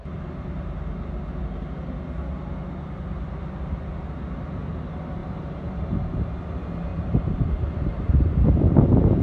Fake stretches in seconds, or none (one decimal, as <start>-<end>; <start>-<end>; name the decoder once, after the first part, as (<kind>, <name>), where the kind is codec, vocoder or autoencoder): 6.9-8.6 (vocoder, BigVGAN v2)